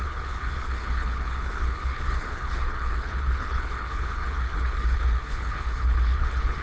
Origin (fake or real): fake